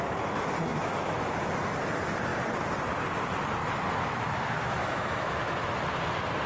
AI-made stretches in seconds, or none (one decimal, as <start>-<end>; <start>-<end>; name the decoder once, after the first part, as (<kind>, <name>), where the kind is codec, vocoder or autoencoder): 0.7-1.2 (autoencoder, DAC-VAE); 3.6-5.8